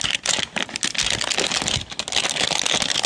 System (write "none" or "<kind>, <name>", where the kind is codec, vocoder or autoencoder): none